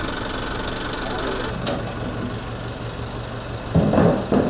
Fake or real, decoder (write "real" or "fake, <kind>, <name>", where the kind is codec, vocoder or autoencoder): real